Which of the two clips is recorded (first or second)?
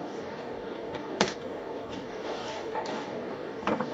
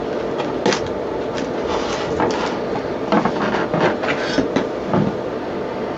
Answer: second